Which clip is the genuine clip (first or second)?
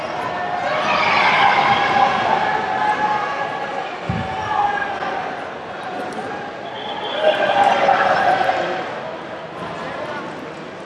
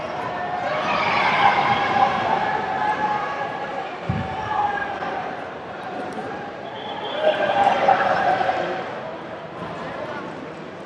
first